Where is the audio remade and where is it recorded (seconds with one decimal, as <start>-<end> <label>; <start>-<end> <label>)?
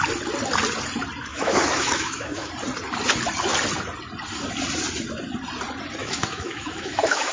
0.0-1.3 recorded; 1.3-2.5 remade; 2.5-6.0 recorded; 6.0-7.3 remade